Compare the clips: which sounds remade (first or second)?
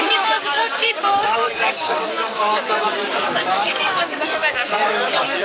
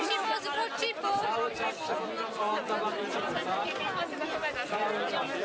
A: first